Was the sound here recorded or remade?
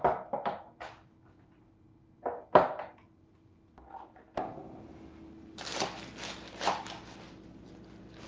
recorded